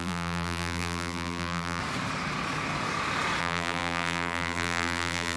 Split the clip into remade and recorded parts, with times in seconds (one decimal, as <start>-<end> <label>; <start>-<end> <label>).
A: 0.0-1.8 remade; 1.8-3.4 recorded; 3.4-5.4 remade